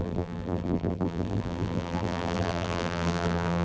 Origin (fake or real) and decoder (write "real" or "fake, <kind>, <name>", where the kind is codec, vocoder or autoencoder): fake, vocoder, BigVGAN v2